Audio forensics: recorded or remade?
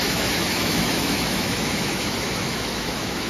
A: remade